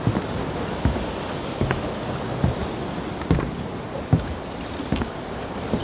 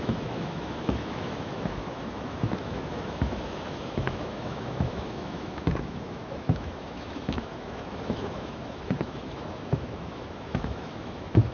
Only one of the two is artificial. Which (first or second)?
second